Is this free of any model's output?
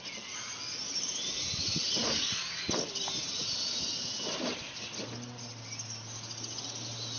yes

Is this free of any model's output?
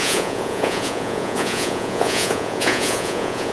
no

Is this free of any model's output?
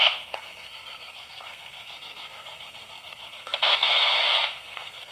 no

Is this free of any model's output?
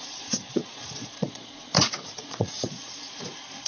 no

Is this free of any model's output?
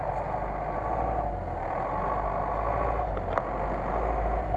yes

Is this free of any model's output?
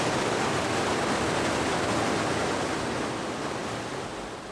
yes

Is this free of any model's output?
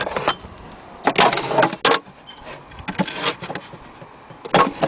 yes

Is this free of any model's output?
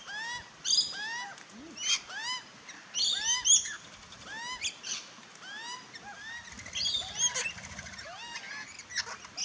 yes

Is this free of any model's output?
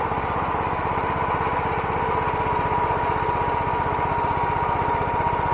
yes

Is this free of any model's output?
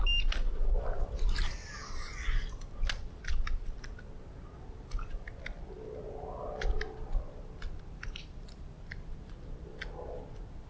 yes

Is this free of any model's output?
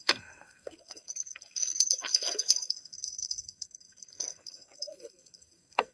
no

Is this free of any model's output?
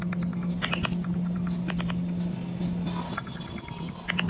yes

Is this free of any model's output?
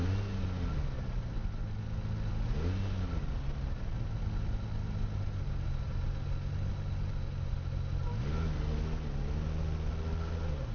yes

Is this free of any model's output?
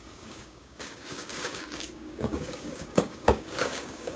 no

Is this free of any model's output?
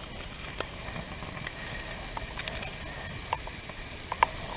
yes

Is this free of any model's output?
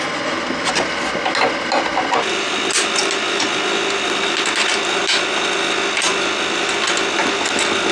yes